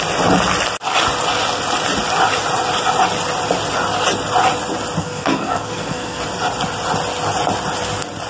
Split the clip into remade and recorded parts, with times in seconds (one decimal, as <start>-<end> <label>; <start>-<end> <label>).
0.0-5.0 recorded; 5.0-6.2 remade; 6.2-8.3 recorded

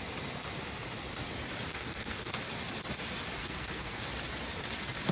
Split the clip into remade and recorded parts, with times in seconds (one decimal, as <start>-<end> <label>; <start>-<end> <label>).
0.0-1.7 recorded; 1.7-2.3 remade; 2.3-3.4 recorded; 3.4-4.1 remade; 4.1-5.1 recorded